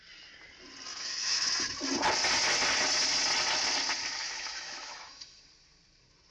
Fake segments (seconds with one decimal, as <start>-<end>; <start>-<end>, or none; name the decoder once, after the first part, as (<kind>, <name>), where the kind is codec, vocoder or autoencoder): 0.9-1.5 (autoencoder, DAC-VAE); 4.2-5.4